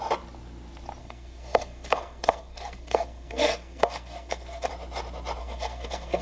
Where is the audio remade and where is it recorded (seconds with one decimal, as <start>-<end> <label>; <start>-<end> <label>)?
0.0-1.0 recorded; 1.0-4.7 remade; 4.7-5.4 recorded; 5.4-6.2 remade